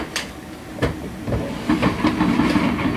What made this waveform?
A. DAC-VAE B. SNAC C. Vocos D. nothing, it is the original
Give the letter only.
D